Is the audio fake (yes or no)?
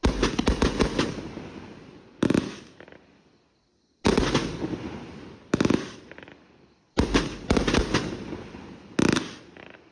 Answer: no